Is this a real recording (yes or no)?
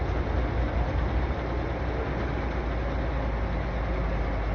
yes